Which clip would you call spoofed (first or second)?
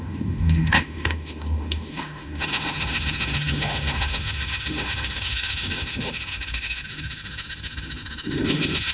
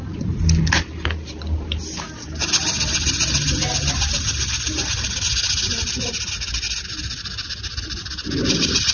first